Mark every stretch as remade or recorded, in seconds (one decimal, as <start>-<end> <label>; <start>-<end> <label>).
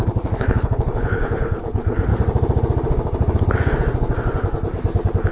0.0-2.1 remade; 2.1-5.3 recorded